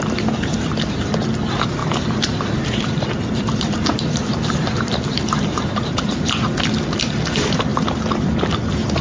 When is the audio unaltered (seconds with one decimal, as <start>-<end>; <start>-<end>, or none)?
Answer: 0.0-1.8; 6.0-9.0

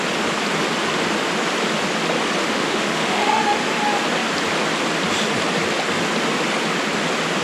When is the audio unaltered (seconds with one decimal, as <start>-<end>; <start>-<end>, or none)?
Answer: 0.0-2.4; 3.6-7.4